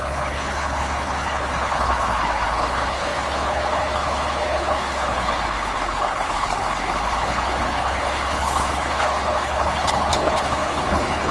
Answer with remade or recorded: remade